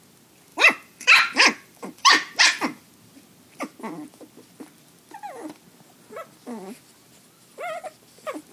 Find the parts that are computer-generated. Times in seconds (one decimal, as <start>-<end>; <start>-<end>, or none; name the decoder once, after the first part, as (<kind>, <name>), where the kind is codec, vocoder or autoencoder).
0.5-2.9 (vocoder, BigVGAN v2)